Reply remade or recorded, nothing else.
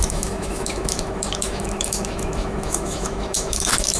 remade